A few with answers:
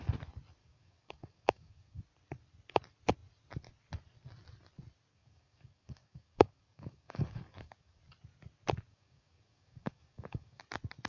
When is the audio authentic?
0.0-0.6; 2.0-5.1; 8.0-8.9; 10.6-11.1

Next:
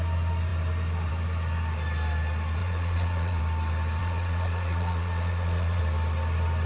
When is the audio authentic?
0.0-2.6; 3.4-4.0; 5.8-6.7

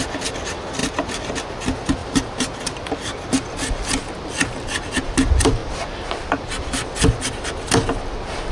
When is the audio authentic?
0.0-8.5

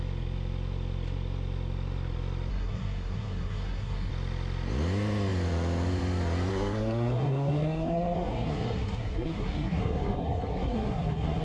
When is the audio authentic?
0.0-2.5; 4.1-6.5

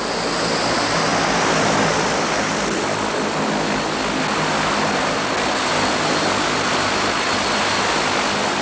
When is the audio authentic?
0.0-8.6

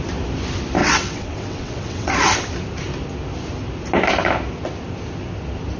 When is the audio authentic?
0.0-0.8; 2.1-5.8

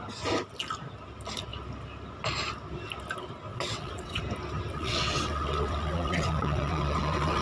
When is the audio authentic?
0.0-3.5; 4.2-4.7